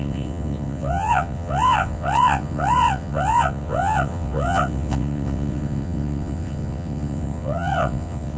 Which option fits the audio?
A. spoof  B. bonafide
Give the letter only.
A